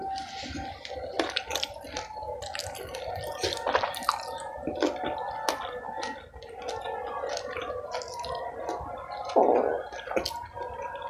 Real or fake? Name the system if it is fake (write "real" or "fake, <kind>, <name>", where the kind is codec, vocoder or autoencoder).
real